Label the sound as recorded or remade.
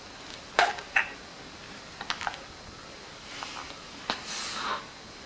recorded